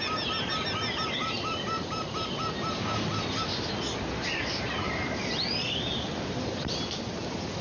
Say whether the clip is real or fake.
real